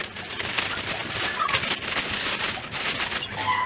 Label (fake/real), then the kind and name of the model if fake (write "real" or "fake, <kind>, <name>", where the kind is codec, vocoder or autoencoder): real